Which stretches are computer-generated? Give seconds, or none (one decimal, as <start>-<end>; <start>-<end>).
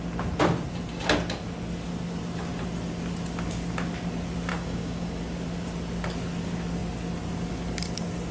4.5-5.2